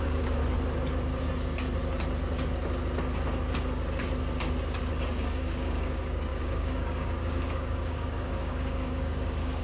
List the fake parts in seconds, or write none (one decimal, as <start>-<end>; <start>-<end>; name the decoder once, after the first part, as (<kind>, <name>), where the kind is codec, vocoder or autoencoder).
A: 0.0-0.4 (codec, DAC); 4.9-9.6